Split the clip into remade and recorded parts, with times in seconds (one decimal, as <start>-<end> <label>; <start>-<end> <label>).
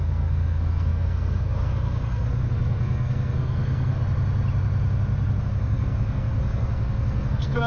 0.0-4.0 remade; 4.0-5.4 recorded; 5.4-7.7 remade